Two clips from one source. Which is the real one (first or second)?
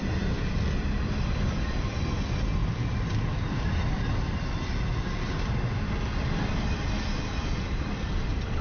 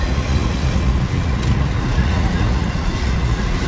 first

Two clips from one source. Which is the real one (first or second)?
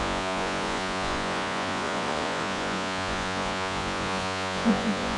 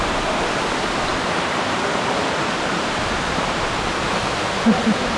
second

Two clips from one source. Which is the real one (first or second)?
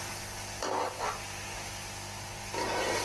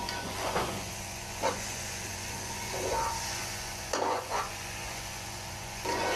first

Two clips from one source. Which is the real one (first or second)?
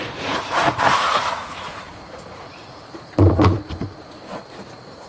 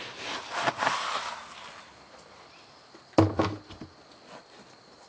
second